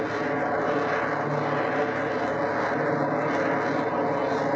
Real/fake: real